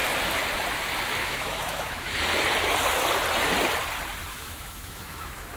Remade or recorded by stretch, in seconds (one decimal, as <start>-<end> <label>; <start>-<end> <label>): 0.0-1.2 recorded; 1.2-2.1 remade; 2.1-4.3 recorded; 4.3-5.6 remade

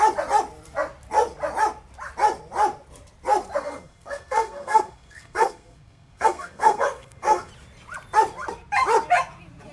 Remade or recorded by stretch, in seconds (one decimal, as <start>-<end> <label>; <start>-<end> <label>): 0.0-3.6 recorded; 3.6-7.5 remade; 7.5-9.7 recorded

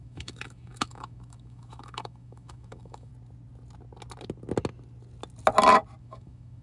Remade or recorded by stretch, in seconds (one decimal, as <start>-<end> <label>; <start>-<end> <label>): 0.0-3.1 remade; 3.1-6.0 recorded; 6.0-6.6 remade

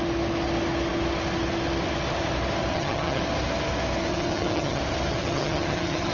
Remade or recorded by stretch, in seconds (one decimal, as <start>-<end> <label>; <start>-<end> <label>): 0.0-2.7 recorded; 2.7-3.2 remade; 3.2-4.1 recorded; 4.1-4.8 remade; 4.8-5.2 recorded; 5.2-6.1 remade

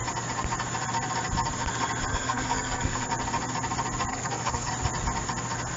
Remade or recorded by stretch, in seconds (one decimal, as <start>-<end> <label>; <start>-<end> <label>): 0.0-2.1 recorded; 2.1-3.1 remade; 3.1-4.1 recorded; 4.1-4.7 remade; 4.7-5.8 recorded

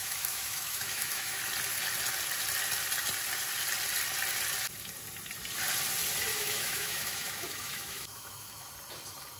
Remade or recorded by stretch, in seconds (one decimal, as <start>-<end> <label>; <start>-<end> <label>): 0.0-1.4 remade; 1.4-6.3 recorded; 6.3-8.7 remade; 8.7-9.4 recorded

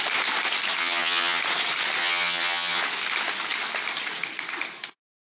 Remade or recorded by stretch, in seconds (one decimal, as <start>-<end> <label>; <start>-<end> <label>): 0.0-0.8 recorded; 0.8-1.4 remade; 1.4-2.0 recorded; 2.0-2.8 remade; 2.8-5.4 recorded